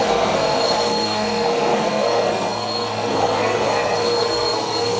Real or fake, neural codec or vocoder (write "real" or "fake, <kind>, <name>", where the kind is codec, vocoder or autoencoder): fake, codec, SNAC